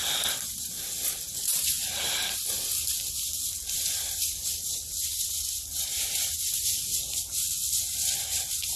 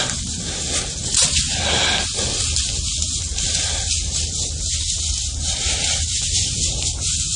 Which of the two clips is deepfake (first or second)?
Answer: first